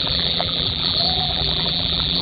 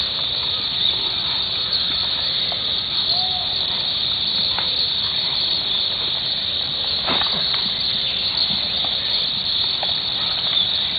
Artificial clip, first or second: first